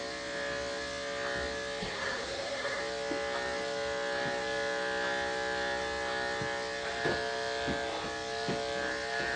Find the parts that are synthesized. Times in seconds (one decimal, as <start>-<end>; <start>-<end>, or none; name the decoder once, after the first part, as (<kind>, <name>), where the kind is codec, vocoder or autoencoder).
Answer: 1.8-2.8 (codec, SNAC)